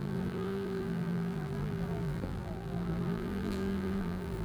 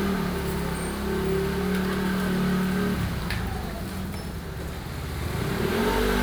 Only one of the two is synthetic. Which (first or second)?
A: first